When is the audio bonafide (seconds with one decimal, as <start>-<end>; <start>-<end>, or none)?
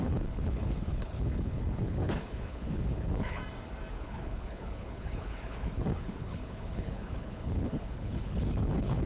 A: 3.4-3.9